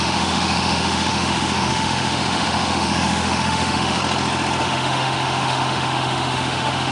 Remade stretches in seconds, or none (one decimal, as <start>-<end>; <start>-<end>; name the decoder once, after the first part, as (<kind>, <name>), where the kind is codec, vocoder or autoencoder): 0.0-4.0 (autoencoder, DAC-VAE); 4.6-6.9